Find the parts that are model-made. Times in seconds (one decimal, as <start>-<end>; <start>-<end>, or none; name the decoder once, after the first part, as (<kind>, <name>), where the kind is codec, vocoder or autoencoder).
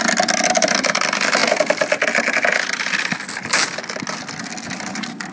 none